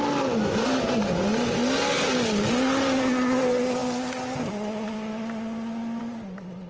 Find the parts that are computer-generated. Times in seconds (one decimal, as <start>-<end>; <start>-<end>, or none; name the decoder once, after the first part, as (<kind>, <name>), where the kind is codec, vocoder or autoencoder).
none